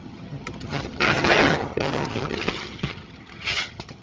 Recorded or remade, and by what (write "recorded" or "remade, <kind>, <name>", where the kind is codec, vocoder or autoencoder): remade, vocoder, HiFi-GAN